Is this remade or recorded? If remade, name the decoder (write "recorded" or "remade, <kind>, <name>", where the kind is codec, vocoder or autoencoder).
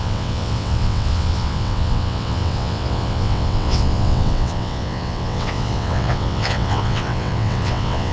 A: remade, vocoder, WaveNeXt